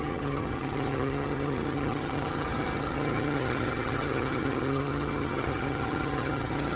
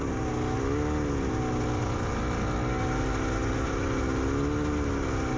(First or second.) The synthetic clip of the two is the first